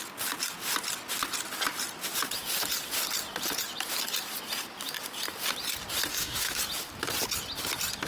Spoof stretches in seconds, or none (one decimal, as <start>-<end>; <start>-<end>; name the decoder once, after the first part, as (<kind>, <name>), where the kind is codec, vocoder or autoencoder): 6.1-6.6 (autoencoder, DAC-VAE)